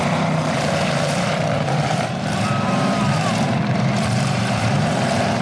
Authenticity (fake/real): fake